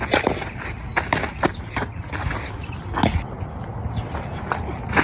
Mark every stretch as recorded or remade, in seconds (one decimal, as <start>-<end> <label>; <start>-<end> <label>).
0.0-5.0 recorded